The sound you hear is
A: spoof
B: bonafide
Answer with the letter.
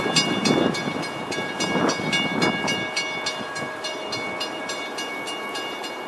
B